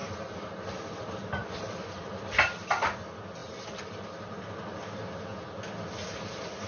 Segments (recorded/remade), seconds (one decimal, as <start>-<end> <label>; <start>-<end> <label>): 0.0-0.7 remade; 0.7-1.4 recorded; 1.4-2.1 remade; 2.1-3.4 recorded; 3.4-3.9 remade; 3.9-6.7 recorded

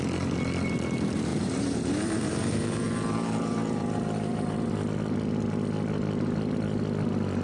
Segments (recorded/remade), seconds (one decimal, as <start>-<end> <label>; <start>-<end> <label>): 0.0-1.3 recorded; 1.3-4.7 remade; 4.7-7.4 recorded